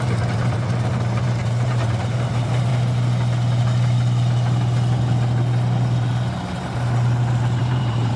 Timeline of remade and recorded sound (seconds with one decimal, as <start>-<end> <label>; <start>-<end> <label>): 0.0-2.7 remade; 2.7-7.6 recorded; 7.6-8.2 remade